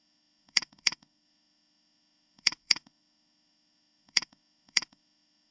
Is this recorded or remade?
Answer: remade